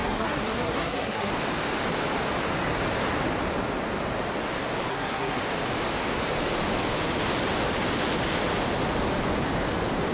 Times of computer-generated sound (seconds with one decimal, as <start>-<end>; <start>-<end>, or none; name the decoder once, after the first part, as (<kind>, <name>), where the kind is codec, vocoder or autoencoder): 0.0-1.3 (codec, SNAC); 4.9-5.4